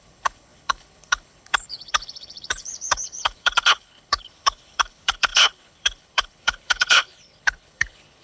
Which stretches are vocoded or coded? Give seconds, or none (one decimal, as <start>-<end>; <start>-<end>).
0.0-8.2